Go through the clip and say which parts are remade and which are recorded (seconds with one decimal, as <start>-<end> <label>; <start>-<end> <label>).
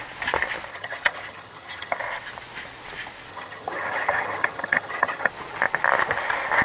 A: 0.0-0.7 recorded; 0.7-2.0 remade; 2.0-3.3 recorded; 3.3-5.3 remade; 5.3-6.6 recorded